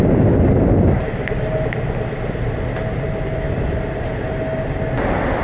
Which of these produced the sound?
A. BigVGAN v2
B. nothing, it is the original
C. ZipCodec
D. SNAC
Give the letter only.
B